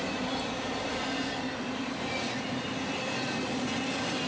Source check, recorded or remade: recorded